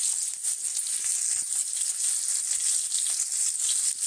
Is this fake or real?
real